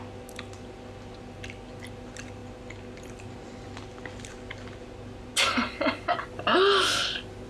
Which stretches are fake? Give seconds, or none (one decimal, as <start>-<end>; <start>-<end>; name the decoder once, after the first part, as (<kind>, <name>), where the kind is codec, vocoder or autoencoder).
none